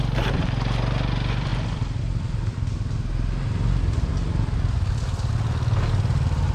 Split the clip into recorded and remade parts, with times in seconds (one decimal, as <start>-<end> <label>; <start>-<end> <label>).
0.0-6.5 recorded